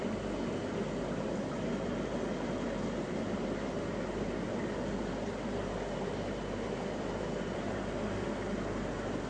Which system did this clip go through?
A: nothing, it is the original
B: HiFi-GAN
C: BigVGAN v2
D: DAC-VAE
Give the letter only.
A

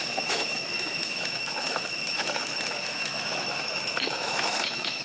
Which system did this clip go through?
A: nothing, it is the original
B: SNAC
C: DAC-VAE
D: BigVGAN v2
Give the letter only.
C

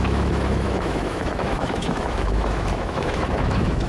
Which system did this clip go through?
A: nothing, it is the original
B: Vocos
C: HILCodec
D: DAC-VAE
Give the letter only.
D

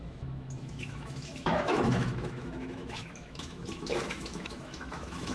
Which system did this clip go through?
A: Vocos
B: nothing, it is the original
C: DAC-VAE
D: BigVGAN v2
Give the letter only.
C